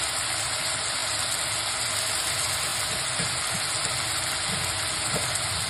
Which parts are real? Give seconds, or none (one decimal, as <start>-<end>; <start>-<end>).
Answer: 0.0-5.7